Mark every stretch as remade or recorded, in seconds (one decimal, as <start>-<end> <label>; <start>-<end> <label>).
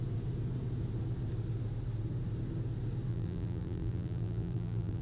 0.0-3.1 recorded; 3.1-5.0 remade